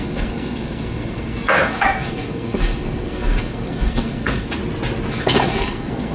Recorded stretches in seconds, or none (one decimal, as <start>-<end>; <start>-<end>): 4.6-5.1